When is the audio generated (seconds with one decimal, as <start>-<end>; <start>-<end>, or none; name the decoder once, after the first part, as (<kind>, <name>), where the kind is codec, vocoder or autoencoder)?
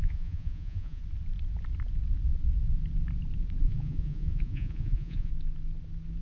0.0-1.0 (vocoder, Vocos); 3.6-5.3